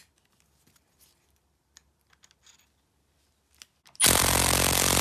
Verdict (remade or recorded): recorded